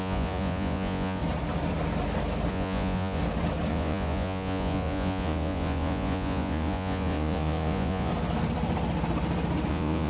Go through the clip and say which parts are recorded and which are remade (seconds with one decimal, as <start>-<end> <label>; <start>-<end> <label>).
0.0-1.2 remade; 1.2-2.5 recorded; 2.5-3.2 remade; 3.2-3.7 recorded; 3.7-8.1 remade; 8.1-9.7 recorded; 9.7-10.1 remade